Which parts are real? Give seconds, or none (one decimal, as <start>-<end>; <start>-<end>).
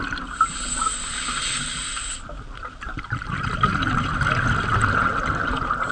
0.0-5.9